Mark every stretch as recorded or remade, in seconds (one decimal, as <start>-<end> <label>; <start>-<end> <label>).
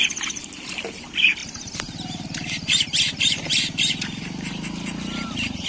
0.0-5.7 remade